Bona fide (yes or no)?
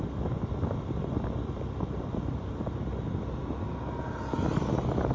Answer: yes